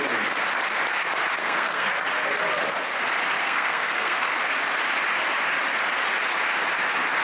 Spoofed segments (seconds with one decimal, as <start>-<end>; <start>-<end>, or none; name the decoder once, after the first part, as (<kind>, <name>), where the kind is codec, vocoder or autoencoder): 1.4-1.9 (codec, SNAC); 3.4-4.3